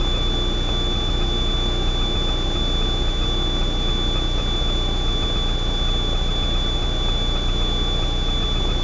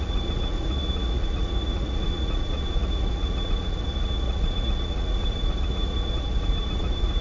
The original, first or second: first